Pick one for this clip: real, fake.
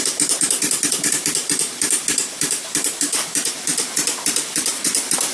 fake